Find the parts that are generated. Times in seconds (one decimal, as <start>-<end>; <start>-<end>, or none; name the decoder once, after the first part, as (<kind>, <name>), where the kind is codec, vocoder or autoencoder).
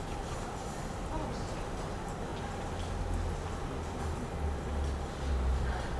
0.0-2.3 (vocoder, BigVGAN v2); 5.3-6.0